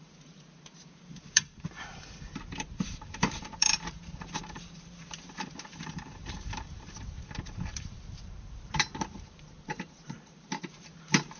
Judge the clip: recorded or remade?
remade